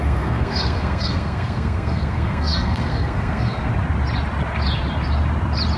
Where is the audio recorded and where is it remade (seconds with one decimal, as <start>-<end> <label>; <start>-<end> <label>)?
0.0-3.7 remade; 3.7-5.8 recorded